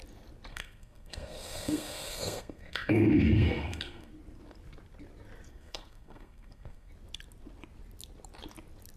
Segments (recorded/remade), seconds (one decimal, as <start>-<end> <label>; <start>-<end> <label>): 0.0-0.5 recorded; 0.5-4.1 remade; 4.1-5.5 recorded; 5.5-6.9 remade; 6.9-9.0 recorded